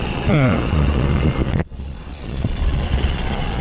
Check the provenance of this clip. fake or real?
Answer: fake